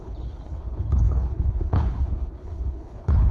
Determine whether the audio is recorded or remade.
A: remade